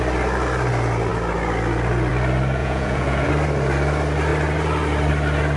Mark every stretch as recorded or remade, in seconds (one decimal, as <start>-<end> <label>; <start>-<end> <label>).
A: 0.0-2.6 recorded; 2.6-3.3 remade; 3.3-5.6 recorded